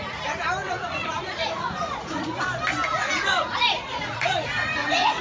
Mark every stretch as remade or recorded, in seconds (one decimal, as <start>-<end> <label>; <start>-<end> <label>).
0.0-0.6 recorded; 0.6-2.4 remade; 2.4-2.9 recorded; 2.9-5.2 remade

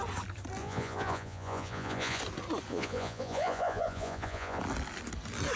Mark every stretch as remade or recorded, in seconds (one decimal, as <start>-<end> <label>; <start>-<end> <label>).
0.0-0.6 recorded; 0.6-2.2 remade; 2.2-2.7 recorded; 2.7-4.6 remade; 4.6-5.6 recorded

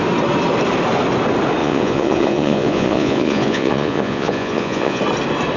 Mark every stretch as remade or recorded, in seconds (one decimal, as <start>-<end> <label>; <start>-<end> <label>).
0.0-1.6 recorded; 1.6-5.0 remade; 5.0-5.6 recorded